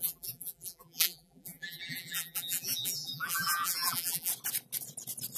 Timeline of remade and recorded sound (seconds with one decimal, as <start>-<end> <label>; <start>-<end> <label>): 0.0-4.3 remade; 4.3-5.4 recorded